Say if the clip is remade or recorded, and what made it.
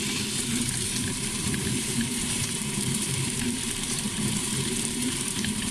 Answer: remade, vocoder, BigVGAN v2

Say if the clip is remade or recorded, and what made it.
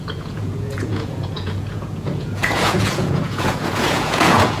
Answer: remade, vocoder, Vocos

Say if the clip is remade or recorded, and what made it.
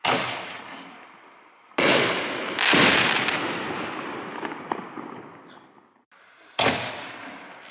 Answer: recorded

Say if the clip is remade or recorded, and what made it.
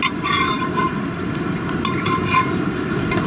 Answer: recorded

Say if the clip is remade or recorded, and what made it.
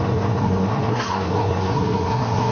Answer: remade, codec, SNAC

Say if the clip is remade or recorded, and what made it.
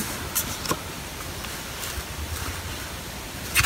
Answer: recorded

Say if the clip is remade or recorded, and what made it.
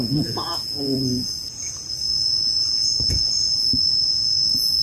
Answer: remade, vocoder, Vocos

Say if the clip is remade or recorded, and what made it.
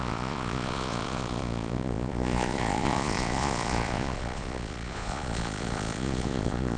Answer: remade, vocoder, Vocos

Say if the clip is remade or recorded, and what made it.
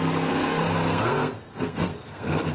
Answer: remade, codec, SNAC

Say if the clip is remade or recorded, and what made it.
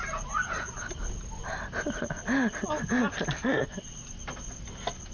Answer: recorded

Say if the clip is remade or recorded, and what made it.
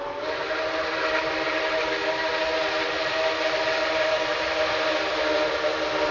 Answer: recorded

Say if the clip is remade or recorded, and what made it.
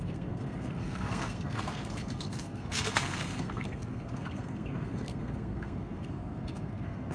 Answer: remade, codec, SNAC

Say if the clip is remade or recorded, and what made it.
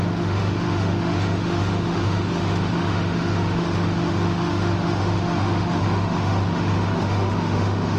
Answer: remade, autoencoder, DAC-VAE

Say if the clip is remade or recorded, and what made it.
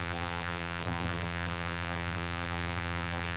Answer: remade, vocoder, BigVGAN v2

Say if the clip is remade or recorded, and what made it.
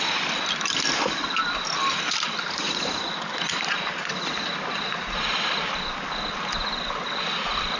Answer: recorded